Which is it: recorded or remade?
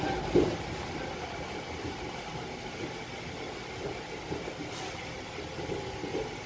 recorded